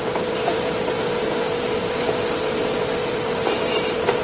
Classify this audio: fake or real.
fake